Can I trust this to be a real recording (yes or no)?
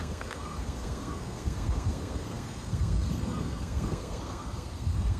no